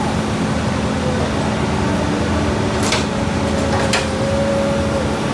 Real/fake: real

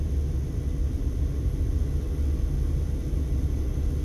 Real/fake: real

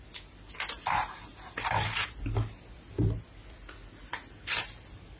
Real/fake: real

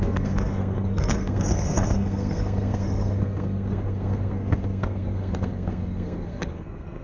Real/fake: fake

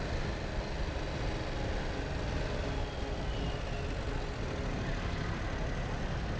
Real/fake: real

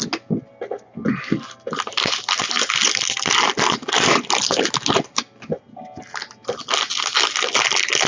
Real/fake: real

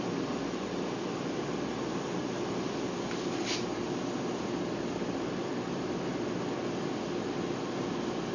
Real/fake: real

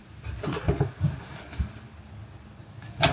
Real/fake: real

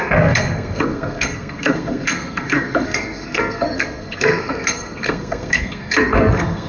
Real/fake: fake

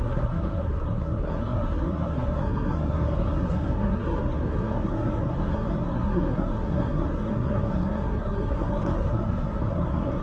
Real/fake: fake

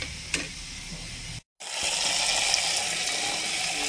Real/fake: real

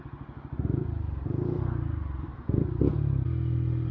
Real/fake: real